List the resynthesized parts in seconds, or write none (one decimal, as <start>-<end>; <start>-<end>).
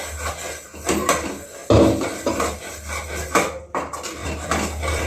4.2-5.1